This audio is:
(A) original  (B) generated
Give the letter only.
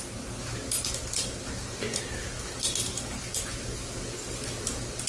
A